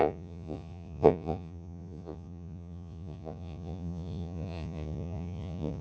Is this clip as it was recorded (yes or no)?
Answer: no